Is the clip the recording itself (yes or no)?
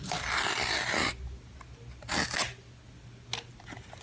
yes